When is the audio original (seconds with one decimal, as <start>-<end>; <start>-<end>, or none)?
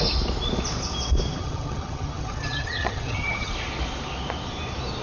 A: 0.0-1.4; 3.5-5.0